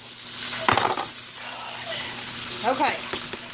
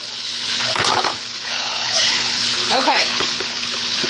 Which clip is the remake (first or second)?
second